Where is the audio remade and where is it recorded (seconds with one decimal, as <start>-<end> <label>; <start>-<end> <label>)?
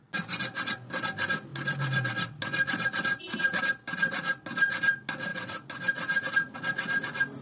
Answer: 0.0-7.4 recorded